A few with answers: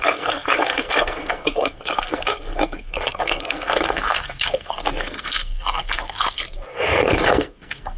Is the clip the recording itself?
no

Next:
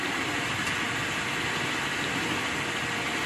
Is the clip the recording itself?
yes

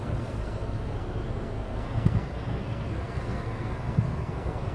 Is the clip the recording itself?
no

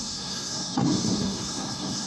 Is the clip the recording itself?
no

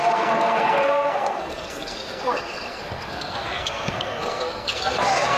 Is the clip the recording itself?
no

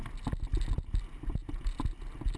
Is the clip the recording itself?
yes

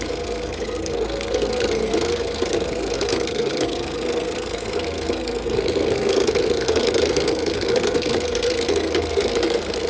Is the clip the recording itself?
no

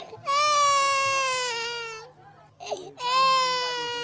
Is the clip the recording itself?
yes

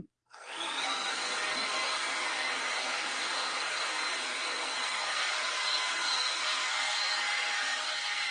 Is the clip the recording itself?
no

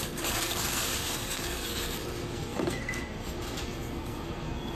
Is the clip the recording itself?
no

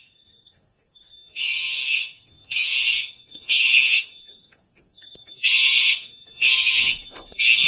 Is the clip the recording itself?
no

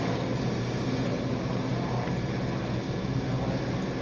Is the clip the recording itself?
yes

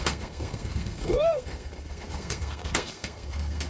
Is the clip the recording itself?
no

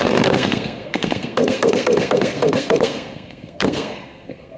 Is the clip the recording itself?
no